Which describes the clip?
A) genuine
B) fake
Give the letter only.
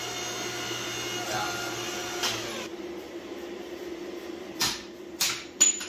A